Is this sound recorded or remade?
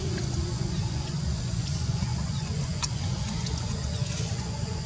remade